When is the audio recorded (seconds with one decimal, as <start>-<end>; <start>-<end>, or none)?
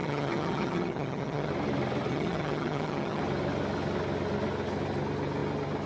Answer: 1.5-2.1; 3.2-5.9